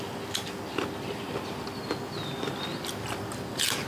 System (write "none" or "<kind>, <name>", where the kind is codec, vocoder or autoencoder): none